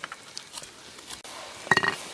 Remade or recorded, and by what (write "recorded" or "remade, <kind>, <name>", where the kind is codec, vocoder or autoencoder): recorded